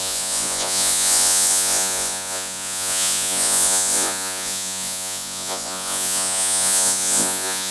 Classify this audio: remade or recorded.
remade